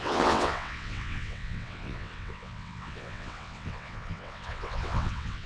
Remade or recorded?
remade